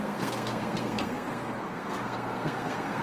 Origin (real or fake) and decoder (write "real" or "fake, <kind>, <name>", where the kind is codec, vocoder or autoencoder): fake, codec, SNAC